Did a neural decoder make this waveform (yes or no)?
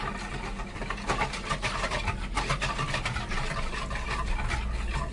no